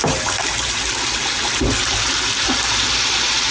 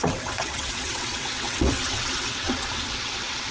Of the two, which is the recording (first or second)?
first